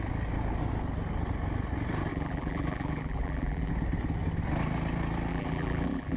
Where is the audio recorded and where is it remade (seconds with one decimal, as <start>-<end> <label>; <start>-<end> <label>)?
0.0-2.1 recorded; 2.1-3.7 remade; 3.7-5.3 recorded; 5.3-6.2 remade